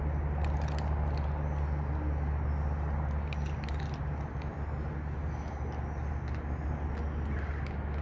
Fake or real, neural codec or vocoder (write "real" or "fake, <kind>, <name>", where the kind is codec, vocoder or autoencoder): real